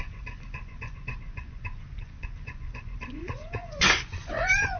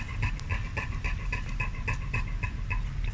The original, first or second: second